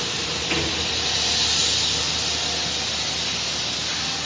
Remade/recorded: recorded